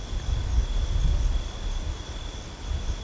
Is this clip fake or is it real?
real